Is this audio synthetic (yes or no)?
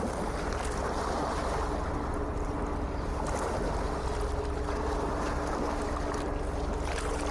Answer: no